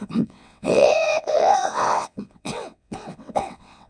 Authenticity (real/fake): fake